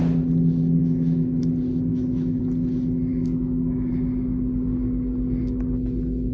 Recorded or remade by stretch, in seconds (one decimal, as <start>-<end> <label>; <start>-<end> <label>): 0.0-0.8 recorded; 0.8-1.4 remade; 1.4-1.9 recorded; 1.9-2.4 remade; 2.4-3.1 recorded; 3.1-3.9 remade; 3.9-6.3 recorded